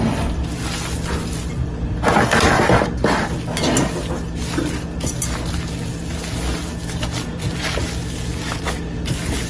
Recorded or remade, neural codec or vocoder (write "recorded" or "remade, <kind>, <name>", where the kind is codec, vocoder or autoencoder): recorded